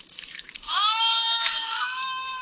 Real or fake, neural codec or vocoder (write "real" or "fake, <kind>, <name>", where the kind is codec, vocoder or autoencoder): fake, autoencoder, DAC-VAE